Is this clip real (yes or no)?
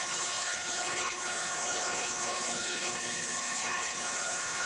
no